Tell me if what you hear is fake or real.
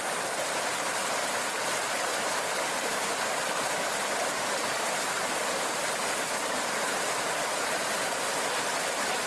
fake